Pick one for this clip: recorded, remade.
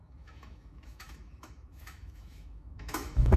remade